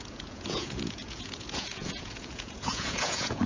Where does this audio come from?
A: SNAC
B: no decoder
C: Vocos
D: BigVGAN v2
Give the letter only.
C